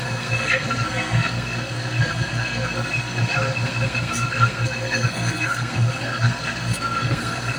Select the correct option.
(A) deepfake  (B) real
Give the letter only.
A